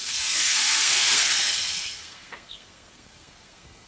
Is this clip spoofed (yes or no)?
yes